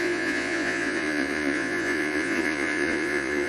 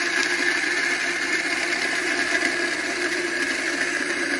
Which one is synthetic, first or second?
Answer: first